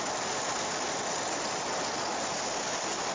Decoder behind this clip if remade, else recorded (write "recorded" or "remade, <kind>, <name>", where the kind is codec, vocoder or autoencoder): recorded